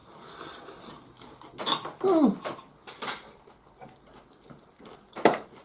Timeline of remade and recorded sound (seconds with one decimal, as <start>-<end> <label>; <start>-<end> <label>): 0.0-5.6 recorded